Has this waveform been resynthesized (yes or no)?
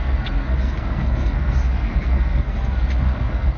yes